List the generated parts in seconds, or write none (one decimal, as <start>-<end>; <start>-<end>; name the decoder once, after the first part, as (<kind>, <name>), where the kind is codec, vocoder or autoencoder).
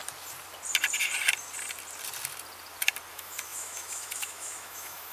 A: 3.1-5.1 (autoencoder, DAC-VAE)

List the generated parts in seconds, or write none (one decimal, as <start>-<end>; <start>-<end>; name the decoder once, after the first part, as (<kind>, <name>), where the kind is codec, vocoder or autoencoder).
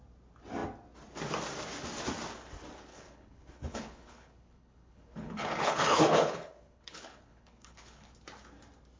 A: 2.9-8.1 (codec, HILCodec)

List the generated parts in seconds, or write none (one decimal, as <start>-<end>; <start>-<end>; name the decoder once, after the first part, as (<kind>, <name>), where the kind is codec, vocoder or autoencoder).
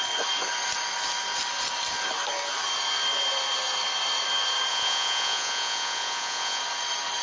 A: 4.7-6.6 (vocoder, Vocos)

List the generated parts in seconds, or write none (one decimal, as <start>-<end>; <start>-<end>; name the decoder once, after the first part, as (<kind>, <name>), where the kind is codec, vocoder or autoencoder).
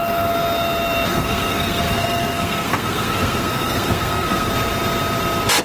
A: 1.1-4.5 (codec, SNAC)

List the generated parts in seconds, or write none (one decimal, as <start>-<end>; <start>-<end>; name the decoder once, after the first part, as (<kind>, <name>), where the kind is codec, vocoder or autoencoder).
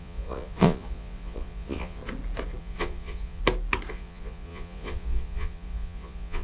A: 0.0-2.0 (vocoder, Vocos); 2.6-3.4; 3.9-6.4